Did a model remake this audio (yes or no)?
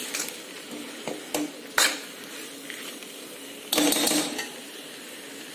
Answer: no